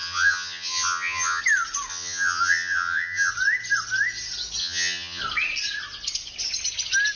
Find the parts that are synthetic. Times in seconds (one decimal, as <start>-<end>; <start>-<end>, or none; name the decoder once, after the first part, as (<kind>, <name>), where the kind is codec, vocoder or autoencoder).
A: 0.0-1.4 (vocoder, HiFi-GAN); 1.9-3.3; 4.6-5.2